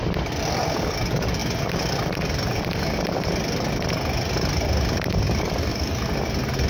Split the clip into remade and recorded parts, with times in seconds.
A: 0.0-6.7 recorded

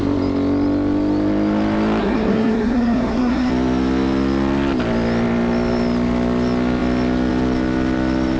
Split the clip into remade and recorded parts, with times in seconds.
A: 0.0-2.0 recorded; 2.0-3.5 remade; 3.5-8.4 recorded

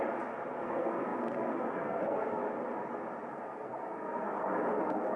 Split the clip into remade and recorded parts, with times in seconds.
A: 0.0-0.6 recorded; 0.6-2.4 remade; 2.4-3.3 recorded; 3.3-5.2 remade

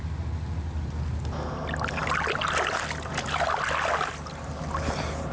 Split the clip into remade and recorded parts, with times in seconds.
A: 0.0-5.3 recorded

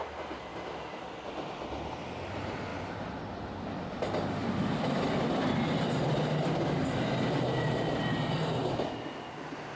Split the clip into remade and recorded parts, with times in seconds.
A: 0.0-9.8 recorded

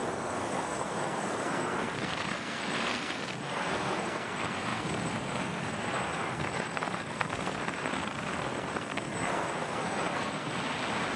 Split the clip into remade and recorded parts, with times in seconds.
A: 0.0-10.5 remade; 10.5-11.2 recorded